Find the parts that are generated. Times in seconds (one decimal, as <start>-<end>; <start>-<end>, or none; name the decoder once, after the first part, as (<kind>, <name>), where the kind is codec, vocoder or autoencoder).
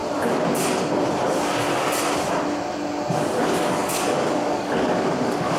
3.4-5.6 (codec, DAC)